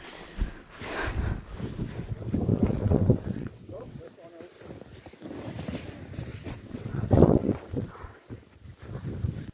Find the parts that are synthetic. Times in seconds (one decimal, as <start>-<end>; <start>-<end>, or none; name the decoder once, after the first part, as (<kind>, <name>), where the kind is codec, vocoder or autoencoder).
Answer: 2.5-4.0 (vocoder, WaveNeXt); 6.3-8.3